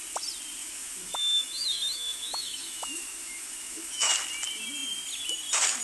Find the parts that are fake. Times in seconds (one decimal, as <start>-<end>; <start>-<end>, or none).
0.6-4.1